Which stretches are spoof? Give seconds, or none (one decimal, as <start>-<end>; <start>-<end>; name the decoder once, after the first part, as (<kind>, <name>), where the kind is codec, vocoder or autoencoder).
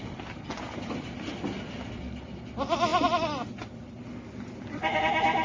none